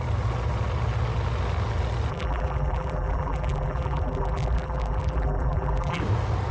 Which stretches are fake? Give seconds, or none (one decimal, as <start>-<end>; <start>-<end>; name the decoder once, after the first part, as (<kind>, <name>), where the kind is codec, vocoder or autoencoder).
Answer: 2.1-6.0 (vocoder, BigVGAN v2)